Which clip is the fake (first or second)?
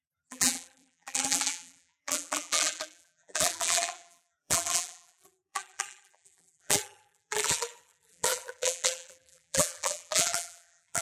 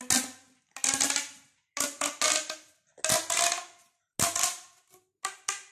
first